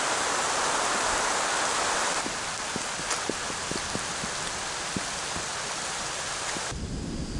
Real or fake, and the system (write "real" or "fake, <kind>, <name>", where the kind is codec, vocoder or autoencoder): real